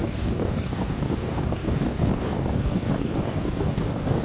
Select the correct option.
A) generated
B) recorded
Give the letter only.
A